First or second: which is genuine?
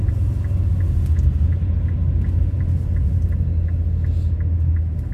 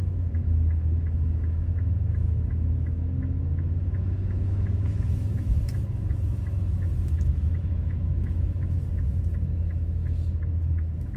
first